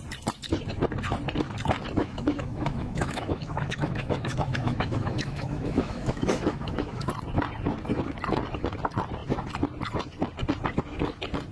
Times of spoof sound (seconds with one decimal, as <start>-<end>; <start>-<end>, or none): 2.0-7.1